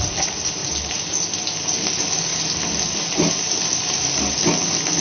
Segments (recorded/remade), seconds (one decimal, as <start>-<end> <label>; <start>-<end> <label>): 0.0-0.6 recorded; 0.6-1.1 remade; 1.1-5.0 recorded